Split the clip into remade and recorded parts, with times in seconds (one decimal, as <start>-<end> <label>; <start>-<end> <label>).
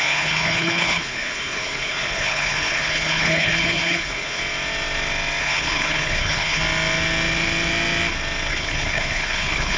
0.0-4.4 remade; 4.4-5.4 recorded; 5.4-6.6 remade; 6.6-8.5 recorded; 8.5-9.8 remade